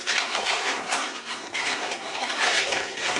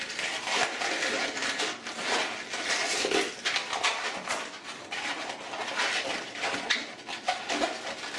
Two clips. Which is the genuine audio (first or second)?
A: second